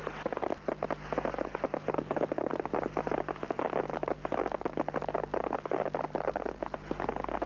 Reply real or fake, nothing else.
real